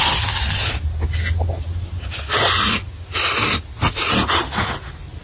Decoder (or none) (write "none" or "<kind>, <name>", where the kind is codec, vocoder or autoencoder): none